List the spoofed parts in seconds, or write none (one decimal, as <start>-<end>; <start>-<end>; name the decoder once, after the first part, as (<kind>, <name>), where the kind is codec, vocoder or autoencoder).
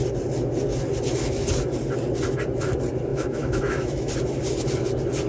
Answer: 3.1-4.1 (autoencoder, DAC-VAE)